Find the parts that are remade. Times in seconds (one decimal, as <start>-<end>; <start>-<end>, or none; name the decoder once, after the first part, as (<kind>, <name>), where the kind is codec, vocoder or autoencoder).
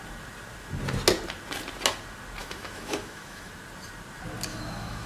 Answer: 2.4-3.5 (autoencoder, DAC-VAE); 4.5-5.1